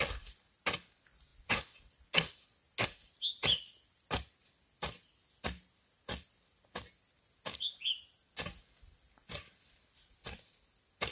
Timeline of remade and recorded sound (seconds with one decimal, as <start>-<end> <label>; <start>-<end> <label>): 0.0-11.1 recorded